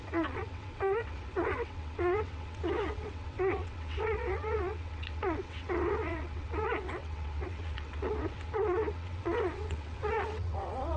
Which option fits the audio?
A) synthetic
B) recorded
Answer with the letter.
A